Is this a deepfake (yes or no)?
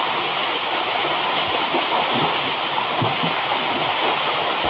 no